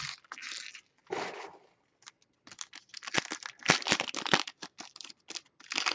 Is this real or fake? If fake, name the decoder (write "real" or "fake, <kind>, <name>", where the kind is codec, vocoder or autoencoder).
real